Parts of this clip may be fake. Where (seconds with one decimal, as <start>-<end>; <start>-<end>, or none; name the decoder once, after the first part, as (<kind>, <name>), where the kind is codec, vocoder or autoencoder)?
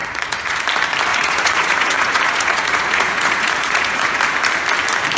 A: 0.0-0.6 (vocoder, Vocos); 1.1-4.2